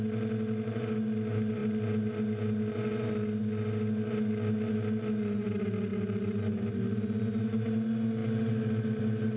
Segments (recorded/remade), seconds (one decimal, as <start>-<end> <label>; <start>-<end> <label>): 0.0-9.4 recorded